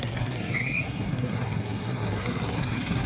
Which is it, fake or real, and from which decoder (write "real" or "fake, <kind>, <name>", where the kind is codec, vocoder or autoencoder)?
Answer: fake, codec, SNAC